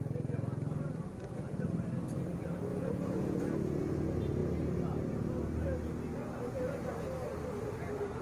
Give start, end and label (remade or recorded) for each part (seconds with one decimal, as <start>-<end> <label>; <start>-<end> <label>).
0.0-2.7 recorded; 2.7-3.4 remade; 3.4-8.2 recorded